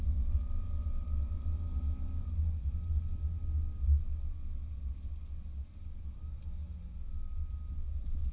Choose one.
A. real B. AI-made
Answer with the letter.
A